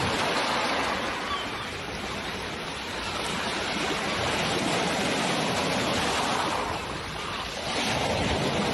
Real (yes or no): no